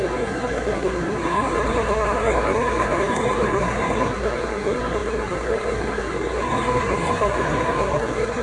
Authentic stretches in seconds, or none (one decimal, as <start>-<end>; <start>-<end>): none